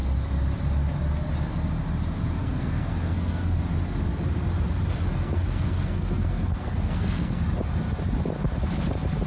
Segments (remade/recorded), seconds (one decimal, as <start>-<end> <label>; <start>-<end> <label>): 0.0-2.4 recorded; 2.4-3.6 remade; 3.6-5.1 recorded; 5.1-7.4 remade; 7.4-9.3 recorded